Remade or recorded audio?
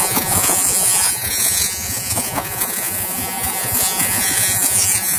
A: remade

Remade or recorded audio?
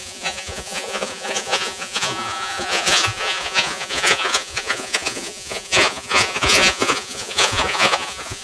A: remade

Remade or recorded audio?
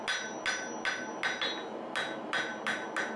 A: recorded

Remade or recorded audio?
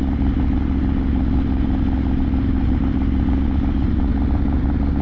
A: recorded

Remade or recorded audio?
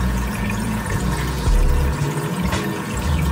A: remade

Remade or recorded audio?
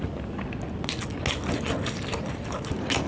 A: recorded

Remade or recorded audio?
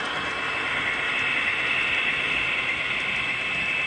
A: recorded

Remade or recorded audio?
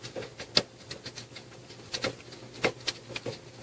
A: recorded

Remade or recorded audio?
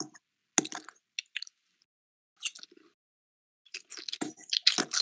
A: recorded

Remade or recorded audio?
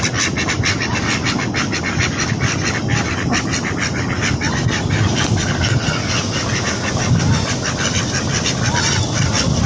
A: recorded